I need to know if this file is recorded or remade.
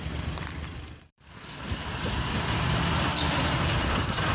remade